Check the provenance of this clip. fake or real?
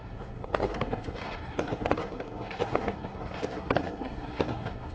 fake